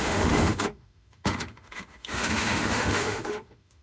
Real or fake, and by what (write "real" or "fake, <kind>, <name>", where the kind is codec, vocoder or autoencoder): fake, autoencoder, DAC-VAE